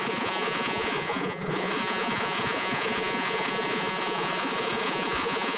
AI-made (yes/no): yes